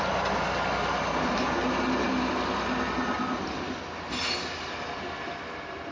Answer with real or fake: real